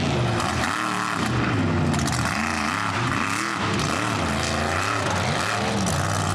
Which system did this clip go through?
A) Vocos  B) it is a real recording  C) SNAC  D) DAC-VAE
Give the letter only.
B